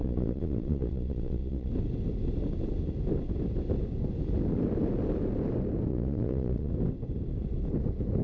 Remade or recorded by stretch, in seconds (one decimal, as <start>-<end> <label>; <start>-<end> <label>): 0.0-1.7 remade; 1.7-5.9 recorded; 5.9-6.7 remade; 6.7-8.2 recorded